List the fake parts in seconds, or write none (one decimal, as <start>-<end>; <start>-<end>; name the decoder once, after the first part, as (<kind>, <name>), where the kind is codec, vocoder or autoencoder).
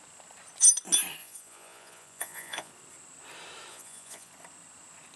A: 1.2-2.7 (vocoder, Vocos); 3.7-4.3